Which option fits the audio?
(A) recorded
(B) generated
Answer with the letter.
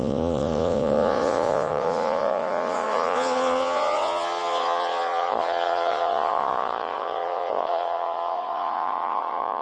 B